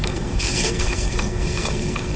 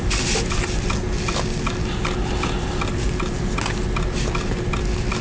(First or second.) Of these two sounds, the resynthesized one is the first